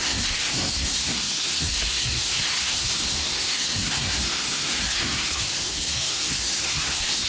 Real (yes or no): no